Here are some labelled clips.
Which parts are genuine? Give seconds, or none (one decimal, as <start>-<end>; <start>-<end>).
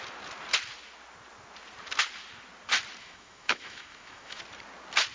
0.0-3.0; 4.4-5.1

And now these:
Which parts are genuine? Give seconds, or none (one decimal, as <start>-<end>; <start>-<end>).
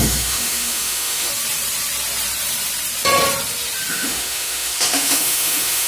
1.3-3.9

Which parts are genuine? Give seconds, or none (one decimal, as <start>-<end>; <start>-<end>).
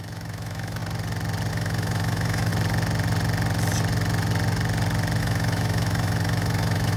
0.8-1.5; 2.5-5.2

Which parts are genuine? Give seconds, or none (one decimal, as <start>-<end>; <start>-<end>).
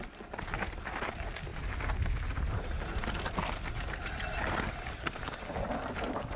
0.0-6.4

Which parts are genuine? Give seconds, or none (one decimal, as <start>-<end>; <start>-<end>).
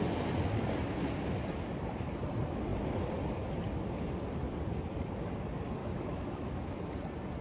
0.0-5.8; 6.8-7.4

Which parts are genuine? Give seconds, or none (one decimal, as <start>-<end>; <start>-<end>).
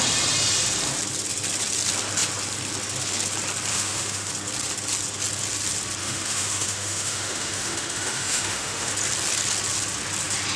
0.0-3.7; 4.3-6.0; 8.9-10.6